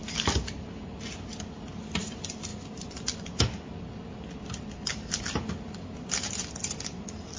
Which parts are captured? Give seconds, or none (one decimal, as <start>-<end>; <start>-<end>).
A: 0.0-7.4